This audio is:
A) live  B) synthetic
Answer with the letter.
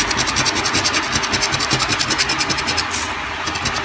A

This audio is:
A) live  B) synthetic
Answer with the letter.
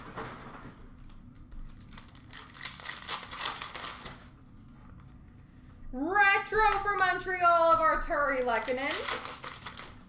A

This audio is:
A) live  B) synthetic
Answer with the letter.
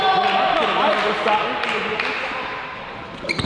A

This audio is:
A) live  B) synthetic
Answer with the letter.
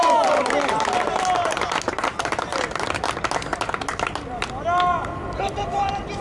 A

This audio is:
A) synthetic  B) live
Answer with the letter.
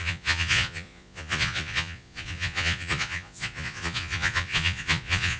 A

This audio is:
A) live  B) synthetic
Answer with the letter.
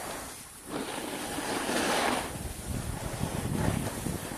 A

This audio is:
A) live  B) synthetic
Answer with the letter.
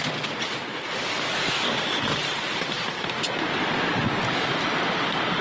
A